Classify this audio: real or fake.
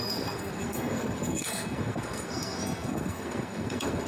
fake